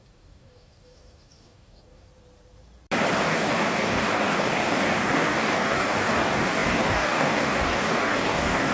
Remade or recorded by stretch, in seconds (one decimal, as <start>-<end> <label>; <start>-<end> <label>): 0.0-2.1 remade; 2.1-3.2 recorded; 3.2-8.7 remade